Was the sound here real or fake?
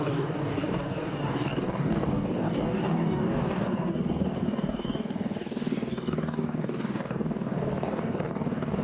fake